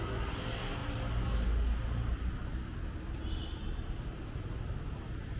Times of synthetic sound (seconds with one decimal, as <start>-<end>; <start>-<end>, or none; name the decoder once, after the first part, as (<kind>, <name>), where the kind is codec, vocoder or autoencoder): none